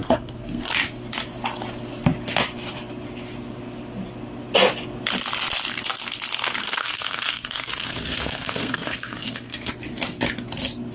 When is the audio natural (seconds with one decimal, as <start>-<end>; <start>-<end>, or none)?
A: 0.7-6.6; 9.7-10.9